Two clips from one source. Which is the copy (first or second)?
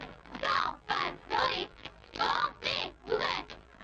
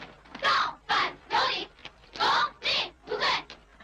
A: first